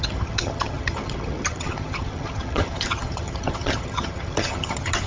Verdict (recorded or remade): remade